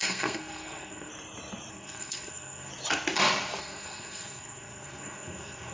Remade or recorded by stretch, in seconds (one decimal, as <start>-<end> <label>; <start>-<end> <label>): 0.0-1.1 remade; 1.1-1.7 recorded; 1.7-2.7 remade; 2.7-3.6 recorded; 3.6-5.7 remade